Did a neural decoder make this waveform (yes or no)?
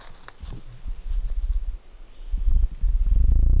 no